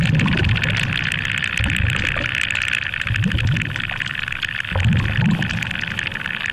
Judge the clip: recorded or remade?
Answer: recorded